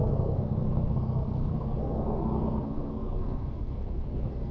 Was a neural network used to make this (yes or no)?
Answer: yes